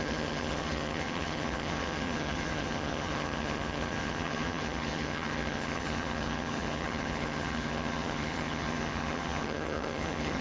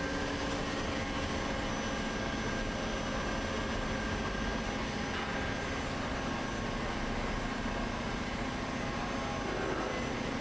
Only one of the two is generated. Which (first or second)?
first